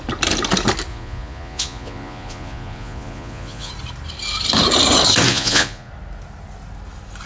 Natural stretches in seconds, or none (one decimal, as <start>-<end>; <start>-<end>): 0.0-0.9; 3.7-5.3; 5.9-7.3